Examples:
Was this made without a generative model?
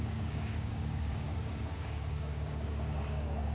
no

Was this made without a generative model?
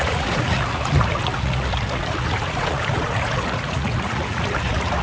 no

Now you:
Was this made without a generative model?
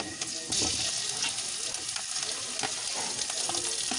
yes